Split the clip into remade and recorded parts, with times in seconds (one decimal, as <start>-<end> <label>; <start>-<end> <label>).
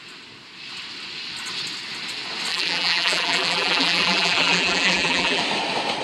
0.0-2.5 recorded; 2.5-5.4 remade; 5.4-6.0 recorded